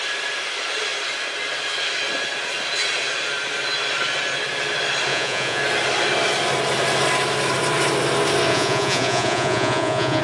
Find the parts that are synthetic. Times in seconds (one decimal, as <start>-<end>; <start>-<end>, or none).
5.1-5.6; 8.5-10.2